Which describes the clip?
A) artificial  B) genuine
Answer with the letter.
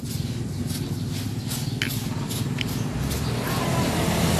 B